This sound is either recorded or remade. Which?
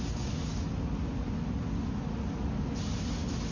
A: recorded